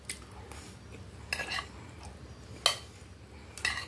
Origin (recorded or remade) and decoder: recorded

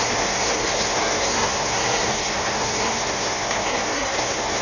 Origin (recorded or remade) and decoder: remade, codec, SNAC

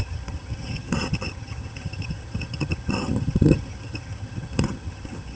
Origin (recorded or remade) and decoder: remade, vocoder, HiFi-GAN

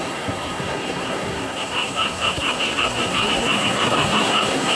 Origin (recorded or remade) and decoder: remade, codec, SNAC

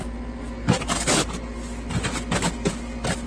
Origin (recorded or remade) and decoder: recorded